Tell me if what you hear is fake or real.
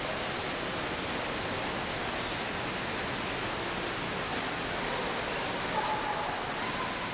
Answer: real